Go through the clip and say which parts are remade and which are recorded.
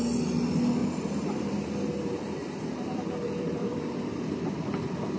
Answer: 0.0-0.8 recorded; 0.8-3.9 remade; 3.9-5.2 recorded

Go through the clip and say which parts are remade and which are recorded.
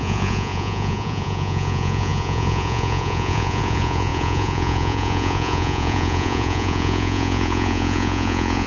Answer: 0.0-8.7 remade